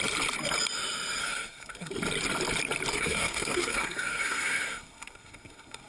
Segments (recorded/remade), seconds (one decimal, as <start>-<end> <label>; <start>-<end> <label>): 0.0-1.2 recorded; 1.2-1.9 remade; 1.9-2.9 recorded; 2.9-5.9 remade